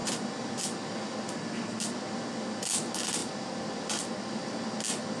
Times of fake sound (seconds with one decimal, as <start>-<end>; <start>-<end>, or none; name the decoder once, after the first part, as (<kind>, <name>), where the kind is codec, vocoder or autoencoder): none